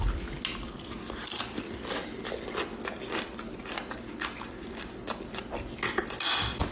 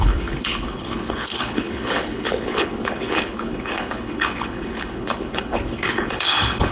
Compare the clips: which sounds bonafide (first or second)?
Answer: first